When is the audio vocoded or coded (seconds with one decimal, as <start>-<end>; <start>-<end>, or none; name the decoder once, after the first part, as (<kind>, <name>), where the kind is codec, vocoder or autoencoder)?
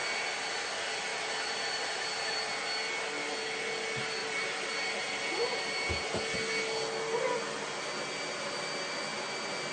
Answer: 1.1-2.5 (vocoder, BigVGAN v2); 4.2-6.2